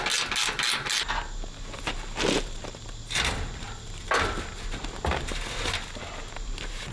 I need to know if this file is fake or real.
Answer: real